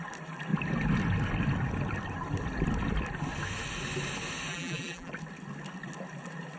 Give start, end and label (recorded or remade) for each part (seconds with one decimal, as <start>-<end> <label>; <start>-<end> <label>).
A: 0.0-4.5 recorded; 4.5-5.1 remade; 5.1-6.6 recorded